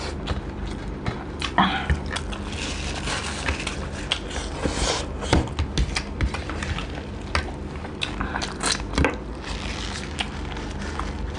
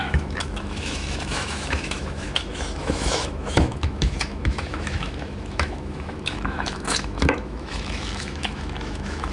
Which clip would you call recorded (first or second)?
first